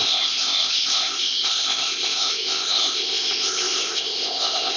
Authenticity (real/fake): fake